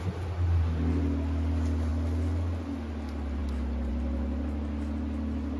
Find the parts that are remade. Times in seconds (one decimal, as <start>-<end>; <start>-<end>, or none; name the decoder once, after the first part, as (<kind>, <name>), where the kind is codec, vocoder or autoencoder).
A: none